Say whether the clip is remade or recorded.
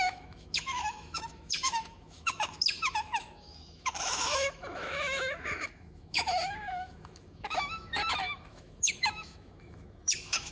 remade